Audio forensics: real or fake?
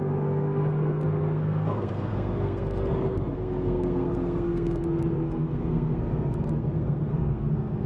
fake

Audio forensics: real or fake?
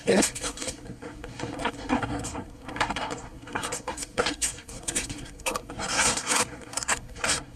fake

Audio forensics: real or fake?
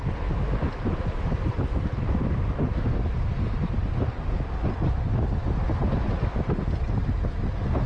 real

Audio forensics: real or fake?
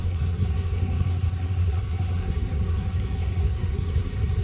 fake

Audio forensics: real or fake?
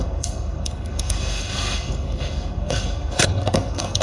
fake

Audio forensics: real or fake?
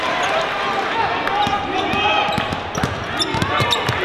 real